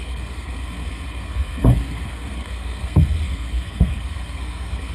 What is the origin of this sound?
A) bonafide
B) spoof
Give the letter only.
B